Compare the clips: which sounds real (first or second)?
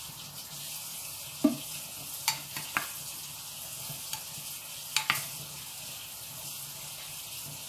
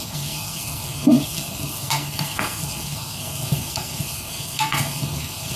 first